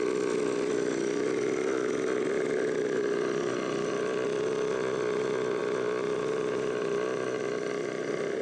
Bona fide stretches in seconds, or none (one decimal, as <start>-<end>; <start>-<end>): 0.0-8.4